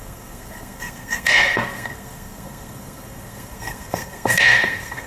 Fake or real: fake